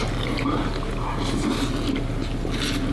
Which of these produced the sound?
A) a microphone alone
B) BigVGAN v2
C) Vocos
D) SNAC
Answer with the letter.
A